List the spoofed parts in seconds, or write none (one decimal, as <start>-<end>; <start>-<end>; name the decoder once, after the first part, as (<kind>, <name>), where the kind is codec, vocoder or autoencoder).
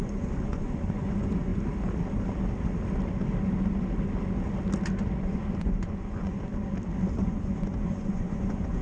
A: 0.0-1.5 (vocoder, Vocos); 5.2-6.5; 7.1-8.8